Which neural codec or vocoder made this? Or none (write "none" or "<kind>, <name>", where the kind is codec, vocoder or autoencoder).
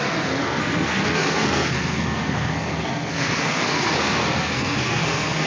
codec, SNAC